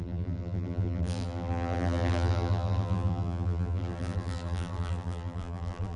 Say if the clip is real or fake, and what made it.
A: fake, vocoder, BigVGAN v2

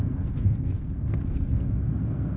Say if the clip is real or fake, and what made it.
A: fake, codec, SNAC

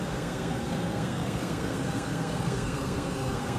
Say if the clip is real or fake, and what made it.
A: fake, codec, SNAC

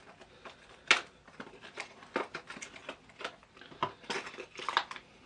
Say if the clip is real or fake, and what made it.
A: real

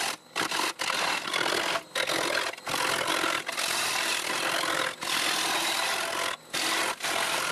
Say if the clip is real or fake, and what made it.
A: real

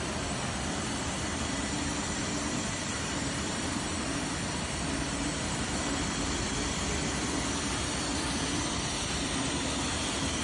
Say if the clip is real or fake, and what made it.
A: fake, vocoder, BigVGAN v2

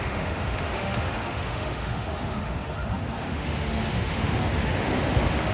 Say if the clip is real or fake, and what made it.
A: fake, autoencoder, DAC-VAE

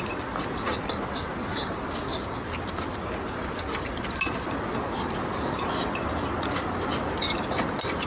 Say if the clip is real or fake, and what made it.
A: real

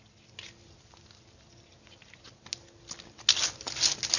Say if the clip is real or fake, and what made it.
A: real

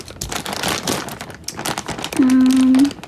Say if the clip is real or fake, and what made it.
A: real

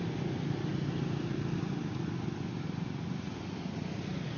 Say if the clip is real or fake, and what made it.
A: real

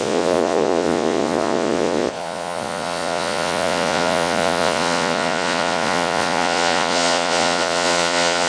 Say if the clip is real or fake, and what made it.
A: fake, vocoder, Vocos